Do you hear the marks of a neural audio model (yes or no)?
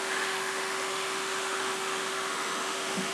yes